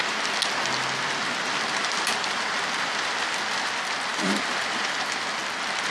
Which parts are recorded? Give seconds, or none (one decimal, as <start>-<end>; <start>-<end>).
0.0-4.1; 5.3-5.9